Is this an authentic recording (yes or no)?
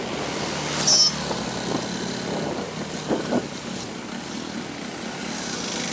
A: yes